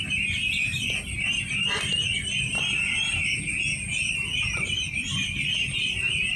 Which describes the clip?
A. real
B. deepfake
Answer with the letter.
A